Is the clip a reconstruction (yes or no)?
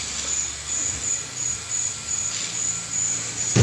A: yes